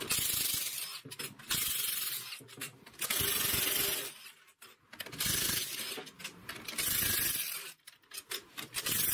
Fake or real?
fake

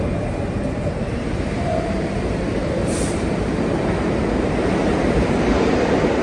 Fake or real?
fake